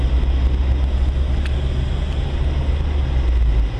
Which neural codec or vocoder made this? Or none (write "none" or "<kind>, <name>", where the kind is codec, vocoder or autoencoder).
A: none